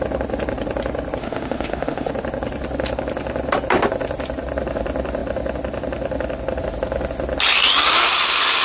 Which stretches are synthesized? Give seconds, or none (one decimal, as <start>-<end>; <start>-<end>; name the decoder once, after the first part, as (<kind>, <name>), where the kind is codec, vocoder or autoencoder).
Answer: 1.2-2.1 (autoencoder, DAC-VAE)